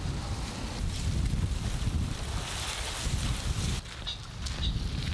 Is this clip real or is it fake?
real